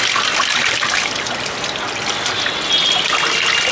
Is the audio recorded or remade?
recorded